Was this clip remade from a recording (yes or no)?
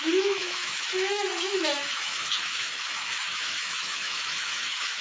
yes